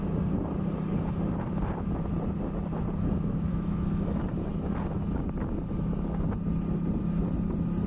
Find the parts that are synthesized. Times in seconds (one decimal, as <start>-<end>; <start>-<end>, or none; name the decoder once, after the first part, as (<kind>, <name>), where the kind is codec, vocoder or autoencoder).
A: 3.5-4.2 (autoencoder, DAC-VAE)

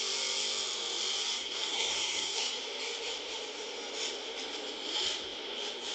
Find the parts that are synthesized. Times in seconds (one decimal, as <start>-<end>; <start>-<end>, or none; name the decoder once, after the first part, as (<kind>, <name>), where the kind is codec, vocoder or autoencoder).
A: 1.4-2.6 (codec, SNAC)

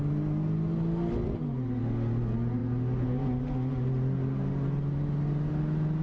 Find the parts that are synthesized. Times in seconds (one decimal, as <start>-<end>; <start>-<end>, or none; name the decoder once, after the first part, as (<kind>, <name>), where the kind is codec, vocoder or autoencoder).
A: none